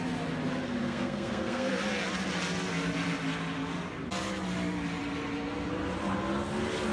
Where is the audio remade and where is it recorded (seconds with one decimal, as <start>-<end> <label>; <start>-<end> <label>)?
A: 0.0-0.8 recorded; 0.8-1.7 remade; 1.7-6.9 recorded